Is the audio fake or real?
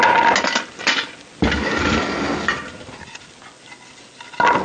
real